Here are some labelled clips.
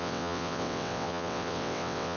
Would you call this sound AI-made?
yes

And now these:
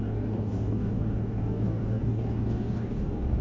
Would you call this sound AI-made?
yes